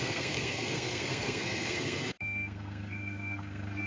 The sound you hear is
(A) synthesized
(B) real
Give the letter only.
A